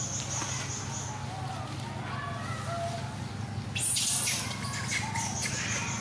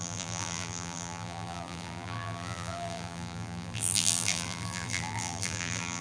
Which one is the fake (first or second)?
second